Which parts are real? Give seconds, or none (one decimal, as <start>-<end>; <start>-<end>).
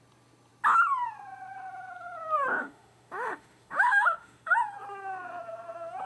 0.0-2.6; 4.5-6.1